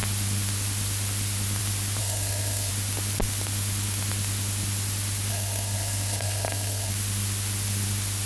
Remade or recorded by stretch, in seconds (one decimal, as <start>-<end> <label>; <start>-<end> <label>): 0.0-2.0 recorded; 2.0-2.7 remade; 2.7-5.3 recorded; 5.3-6.9 remade; 6.9-8.3 recorded